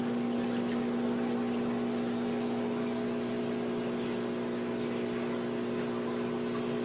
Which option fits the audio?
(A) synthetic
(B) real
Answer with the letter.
B